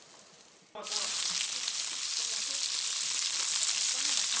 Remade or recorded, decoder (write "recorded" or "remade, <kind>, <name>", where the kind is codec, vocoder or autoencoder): recorded